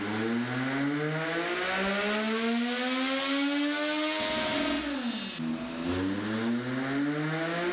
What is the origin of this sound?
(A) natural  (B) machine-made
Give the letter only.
A